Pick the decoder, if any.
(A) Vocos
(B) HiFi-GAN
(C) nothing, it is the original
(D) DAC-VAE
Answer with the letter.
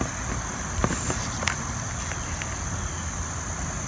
C